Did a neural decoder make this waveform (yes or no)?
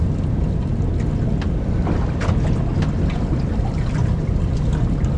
no